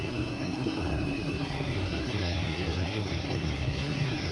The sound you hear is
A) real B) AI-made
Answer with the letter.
B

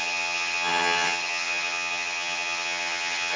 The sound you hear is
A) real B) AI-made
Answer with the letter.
B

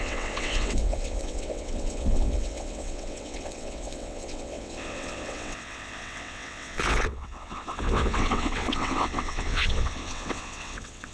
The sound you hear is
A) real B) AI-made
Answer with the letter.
B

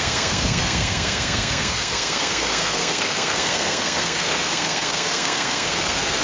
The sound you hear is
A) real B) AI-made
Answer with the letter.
B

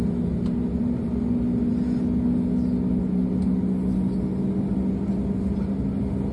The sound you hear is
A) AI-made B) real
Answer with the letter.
B